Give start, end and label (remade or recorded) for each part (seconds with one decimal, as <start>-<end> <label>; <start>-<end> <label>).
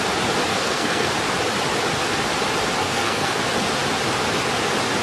0.0-0.5 recorded; 0.5-1.1 remade; 1.1-2.8 recorded; 2.8-3.4 remade; 3.4-5.0 recorded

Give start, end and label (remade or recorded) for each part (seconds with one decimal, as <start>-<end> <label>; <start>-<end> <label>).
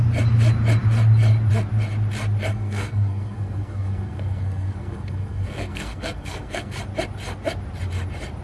0.0-2.5 recorded; 2.5-6.8 remade; 6.8-8.4 recorded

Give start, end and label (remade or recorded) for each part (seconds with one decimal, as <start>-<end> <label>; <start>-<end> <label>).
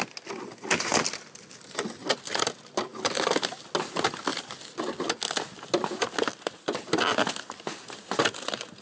0.0-8.8 recorded